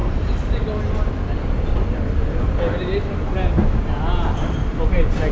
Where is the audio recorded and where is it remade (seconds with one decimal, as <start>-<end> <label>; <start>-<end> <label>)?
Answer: 0.0-5.3 recorded